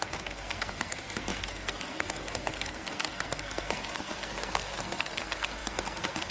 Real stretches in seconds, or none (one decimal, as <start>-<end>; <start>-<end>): none